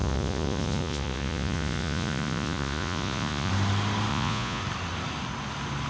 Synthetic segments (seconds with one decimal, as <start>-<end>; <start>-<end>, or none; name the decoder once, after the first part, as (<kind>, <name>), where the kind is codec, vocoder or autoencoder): 0.0-3.5 (vocoder, Vocos); 4.1-4.6